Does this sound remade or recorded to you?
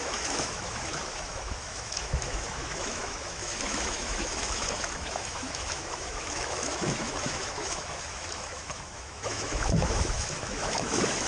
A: remade